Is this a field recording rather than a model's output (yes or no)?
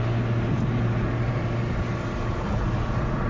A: yes